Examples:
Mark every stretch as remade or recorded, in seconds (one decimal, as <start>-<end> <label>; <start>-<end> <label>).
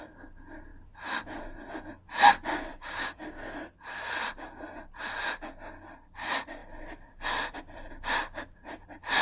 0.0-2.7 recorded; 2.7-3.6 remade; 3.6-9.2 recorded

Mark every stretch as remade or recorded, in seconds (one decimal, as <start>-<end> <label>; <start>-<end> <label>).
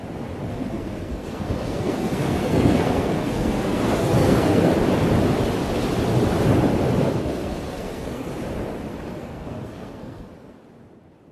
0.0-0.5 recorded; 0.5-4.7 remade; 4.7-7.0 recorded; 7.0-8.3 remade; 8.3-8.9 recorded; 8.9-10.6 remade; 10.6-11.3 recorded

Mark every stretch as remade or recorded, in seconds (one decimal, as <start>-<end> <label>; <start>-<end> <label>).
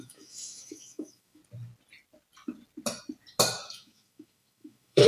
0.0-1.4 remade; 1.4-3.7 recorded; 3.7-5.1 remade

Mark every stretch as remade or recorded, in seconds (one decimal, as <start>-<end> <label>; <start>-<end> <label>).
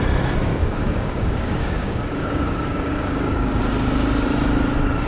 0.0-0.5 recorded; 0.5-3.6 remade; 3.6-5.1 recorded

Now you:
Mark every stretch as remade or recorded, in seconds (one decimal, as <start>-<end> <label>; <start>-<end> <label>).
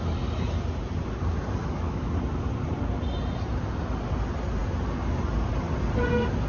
0.0-1.6 recorded; 1.6-2.1 remade; 2.1-6.5 recorded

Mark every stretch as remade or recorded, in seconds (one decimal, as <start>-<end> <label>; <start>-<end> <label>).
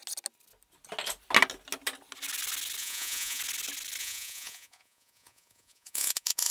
0.0-2.8 recorded; 2.8-3.4 remade; 3.4-4.0 recorded; 4.0-6.5 remade